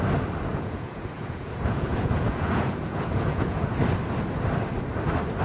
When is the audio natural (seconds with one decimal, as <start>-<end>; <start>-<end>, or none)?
0.0-0.5; 3.7-5.4